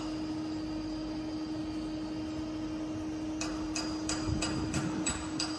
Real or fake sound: real